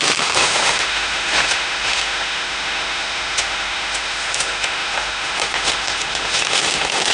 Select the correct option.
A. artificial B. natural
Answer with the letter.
A